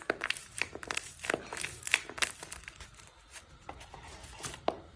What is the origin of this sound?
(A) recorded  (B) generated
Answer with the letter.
A